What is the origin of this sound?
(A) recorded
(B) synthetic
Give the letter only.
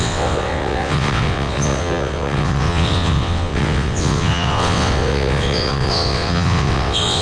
B